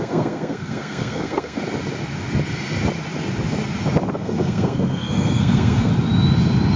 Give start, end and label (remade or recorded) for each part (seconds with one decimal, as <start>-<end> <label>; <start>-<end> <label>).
0.0-1.6 remade; 1.6-4.1 recorded; 4.1-5.9 remade; 5.9-6.8 recorded